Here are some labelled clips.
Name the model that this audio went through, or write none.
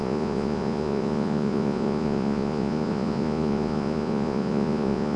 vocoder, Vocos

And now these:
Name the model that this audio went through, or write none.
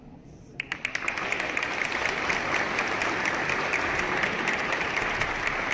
none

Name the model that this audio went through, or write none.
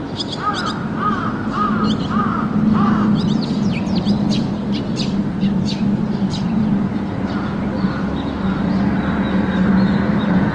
none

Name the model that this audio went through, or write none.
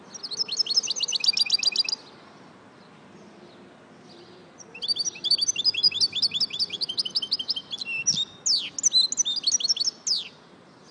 none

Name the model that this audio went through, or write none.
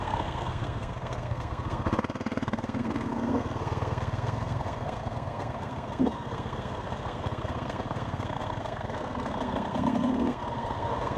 codec, SNAC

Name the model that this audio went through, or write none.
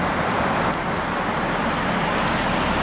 none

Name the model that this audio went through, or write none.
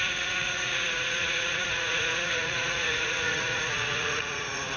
vocoder, Vocos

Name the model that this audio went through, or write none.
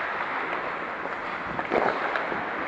none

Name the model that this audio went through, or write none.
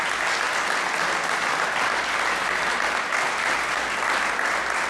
none